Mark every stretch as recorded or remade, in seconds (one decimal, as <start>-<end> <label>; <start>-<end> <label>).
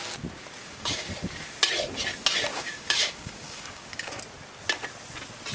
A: 0.0-0.6 recorded; 0.6-1.1 remade; 1.1-2.5 recorded; 2.5-4.2 remade; 4.2-5.5 recorded